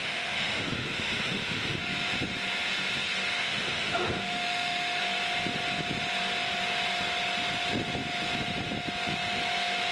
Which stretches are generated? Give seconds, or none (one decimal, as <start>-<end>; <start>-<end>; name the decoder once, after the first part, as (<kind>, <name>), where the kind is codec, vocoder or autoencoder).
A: 0.0-1.8 (autoencoder, DAC-VAE); 3.4-5.0